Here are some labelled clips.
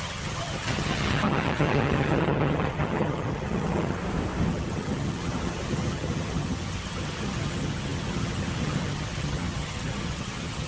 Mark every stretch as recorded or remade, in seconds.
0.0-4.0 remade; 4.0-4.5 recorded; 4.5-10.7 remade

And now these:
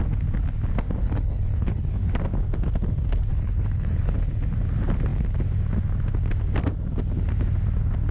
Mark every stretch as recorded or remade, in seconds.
0.0-1.0 recorded; 1.0-2.0 remade; 2.0-3.3 recorded; 3.3-4.3 remade; 4.3-8.1 recorded

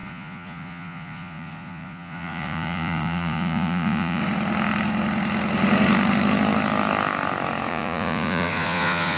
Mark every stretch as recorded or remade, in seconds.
0.0-4.2 remade; 4.2-7.7 recorded; 7.7-9.2 remade